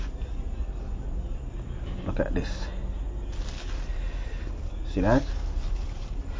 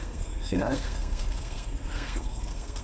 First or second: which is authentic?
first